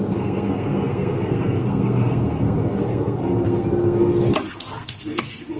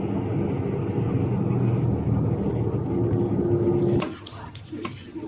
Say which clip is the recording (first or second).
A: second